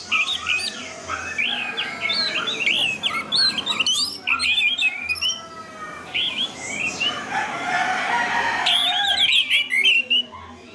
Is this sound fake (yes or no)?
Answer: no